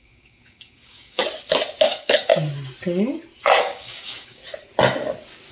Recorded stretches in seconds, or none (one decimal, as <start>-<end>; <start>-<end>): 1.2-1.9; 2.3-3.6; 4.4-5.5